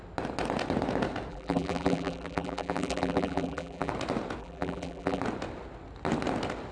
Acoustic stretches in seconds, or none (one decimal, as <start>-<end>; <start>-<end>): 0.0-1.3; 3.9-4.4; 5.2-6.7